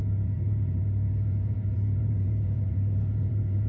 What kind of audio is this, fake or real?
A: fake